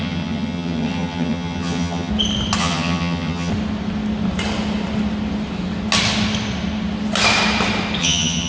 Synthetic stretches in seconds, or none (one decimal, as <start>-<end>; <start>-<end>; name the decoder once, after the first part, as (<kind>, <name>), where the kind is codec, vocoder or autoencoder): 0.0-2.1 (vocoder, HiFi-GAN); 2.6-3.5; 8.0-8.5